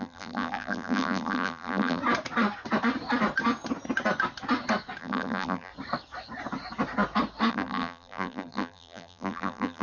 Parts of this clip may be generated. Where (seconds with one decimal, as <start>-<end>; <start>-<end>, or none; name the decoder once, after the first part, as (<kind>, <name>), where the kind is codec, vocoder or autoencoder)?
0.0-2.0 (vocoder, BigVGAN v2); 5.0-5.7; 7.5-9.8